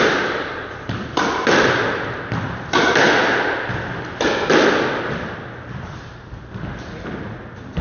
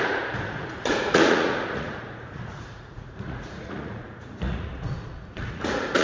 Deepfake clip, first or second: second